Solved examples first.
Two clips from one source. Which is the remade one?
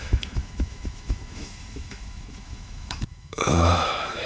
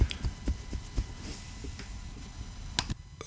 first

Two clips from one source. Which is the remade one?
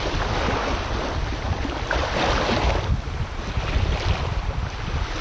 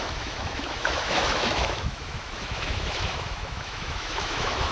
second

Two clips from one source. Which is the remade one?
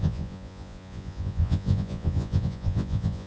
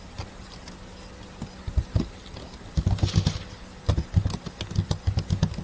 first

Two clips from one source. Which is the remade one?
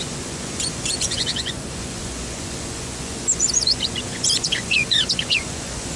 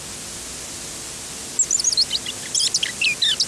first